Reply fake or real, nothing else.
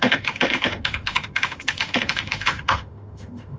fake